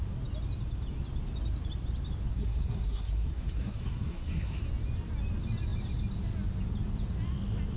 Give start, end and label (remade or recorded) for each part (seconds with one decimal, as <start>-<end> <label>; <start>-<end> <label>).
0.0-2.3 recorded; 2.3-4.6 remade; 4.6-7.8 recorded